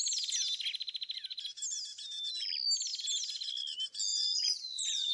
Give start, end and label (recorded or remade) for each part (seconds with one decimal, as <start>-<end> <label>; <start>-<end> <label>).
0.0-4.1 recorded; 4.1-5.1 remade